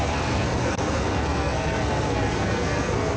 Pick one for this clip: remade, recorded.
remade